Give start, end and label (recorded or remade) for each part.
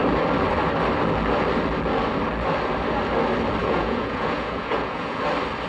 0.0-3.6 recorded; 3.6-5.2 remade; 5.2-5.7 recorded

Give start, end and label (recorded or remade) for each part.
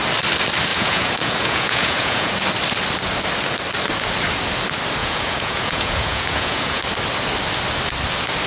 0.0-0.7 recorded; 0.7-2.3 remade; 2.3-5.0 recorded; 5.0-6.8 remade; 6.8-8.5 recorded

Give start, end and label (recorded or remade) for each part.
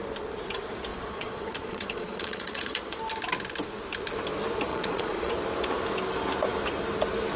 0.0-0.9 recorded; 0.9-3.0 remade; 3.0-4.7 recorded; 4.7-5.3 remade; 5.3-7.4 recorded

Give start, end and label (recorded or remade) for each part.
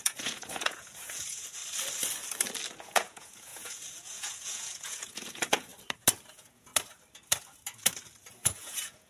0.0-1.6 remade; 1.6-2.8 recorded; 2.8-5.7 remade; 5.7-6.3 recorded; 6.3-6.7 remade; 6.7-8.3 recorded; 8.3-9.1 remade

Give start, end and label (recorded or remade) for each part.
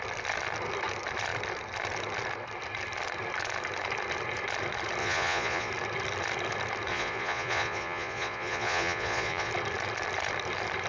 0.0-5.0 recorded; 5.0-5.7 remade; 5.7-6.9 recorded; 6.9-9.5 remade; 9.5-10.9 recorded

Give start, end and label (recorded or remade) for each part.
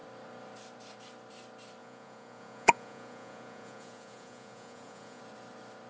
0.0-1.8 recorded; 1.8-5.2 remade; 5.2-5.9 recorded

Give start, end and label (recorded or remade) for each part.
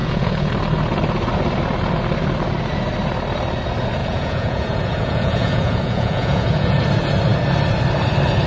0.0-0.5 remade; 0.5-4.0 recorded; 4.0-6.8 remade; 6.8-8.5 recorded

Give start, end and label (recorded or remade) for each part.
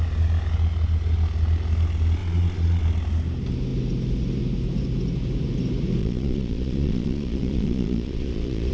0.0-2.2 recorded; 2.2-2.8 remade; 2.8-6.0 recorded; 6.0-8.7 remade